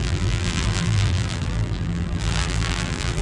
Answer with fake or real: fake